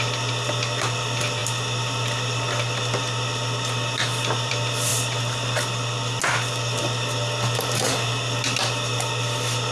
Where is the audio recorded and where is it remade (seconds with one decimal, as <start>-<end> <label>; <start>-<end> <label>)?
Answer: 0.0-9.7 recorded